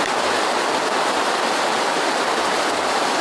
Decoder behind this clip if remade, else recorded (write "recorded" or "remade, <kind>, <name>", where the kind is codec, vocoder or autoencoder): recorded